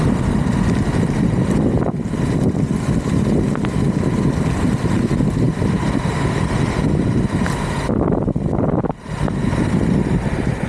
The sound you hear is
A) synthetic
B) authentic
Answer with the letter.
B